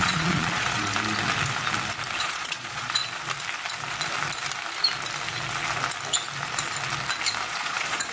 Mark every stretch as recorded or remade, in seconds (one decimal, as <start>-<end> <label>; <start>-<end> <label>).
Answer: 0.0-0.9 remade; 0.9-2.2 recorded; 2.2-3.0 remade; 3.0-7.5 recorded; 7.5-8.1 remade